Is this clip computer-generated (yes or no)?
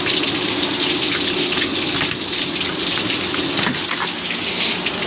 no